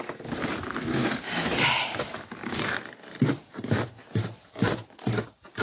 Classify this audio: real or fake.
fake